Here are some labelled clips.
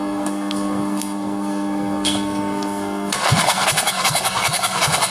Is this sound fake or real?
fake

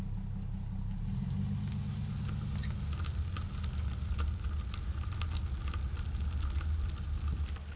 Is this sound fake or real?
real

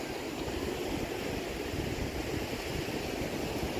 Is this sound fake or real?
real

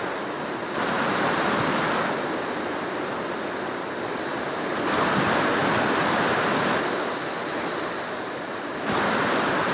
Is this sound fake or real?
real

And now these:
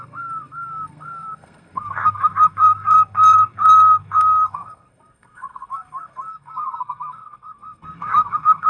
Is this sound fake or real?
fake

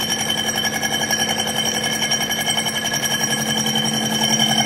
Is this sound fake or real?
real